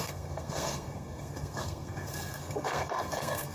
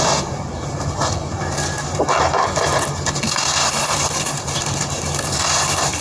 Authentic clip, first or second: second